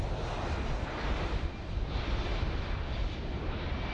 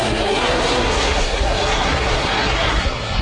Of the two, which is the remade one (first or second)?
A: second